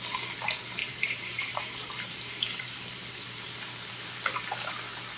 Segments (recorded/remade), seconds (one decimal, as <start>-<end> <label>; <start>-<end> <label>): 0.0-0.8 recorded; 0.8-3.9 remade; 3.9-5.2 recorded